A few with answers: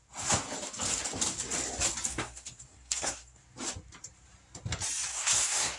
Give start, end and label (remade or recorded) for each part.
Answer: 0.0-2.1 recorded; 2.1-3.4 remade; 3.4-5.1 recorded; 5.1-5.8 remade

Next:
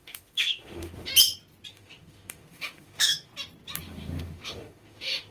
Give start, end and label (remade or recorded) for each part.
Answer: 0.0-1.1 remade; 1.1-1.7 recorded; 1.7-3.3 remade; 3.3-3.8 recorded; 3.8-5.3 remade

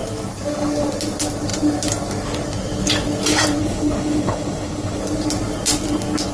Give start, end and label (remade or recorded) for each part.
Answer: 0.0-3.6 recorded; 3.6-5.0 remade; 5.0-6.3 recorded

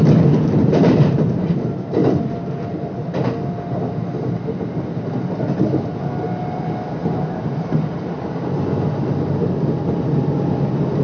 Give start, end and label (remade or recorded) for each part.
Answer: 0.0-0.6 recorded; 0.6-1.7 remade; 1.7-7.0 recorded; 7.0-8.6 remade; 8.6-11.0 recorded

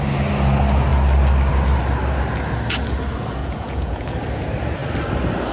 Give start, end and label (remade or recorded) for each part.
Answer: 0.0-3.4 recorded; 3.4-4.1 remade; 4.1-5.5 recorded

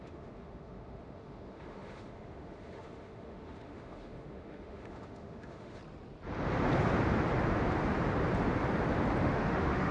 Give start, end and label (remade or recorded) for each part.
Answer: 0.0-5.8 remade; 5.8-9.2 recorded; 9.2-9.9 remade

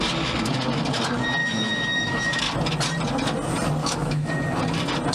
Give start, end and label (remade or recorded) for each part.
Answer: 0.0-1.4 recorded; 1.4-2.4 remade; 2.4-3.8 recorded; 3.8-4.3 remade; 4.3-5.1 recorded

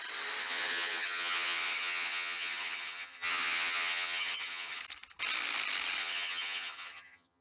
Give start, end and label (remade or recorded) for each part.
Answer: 0.0-0.4 recorded; 0.4-4.8 remade; 4.8-6.0 recorded; 6.0-7.4 remade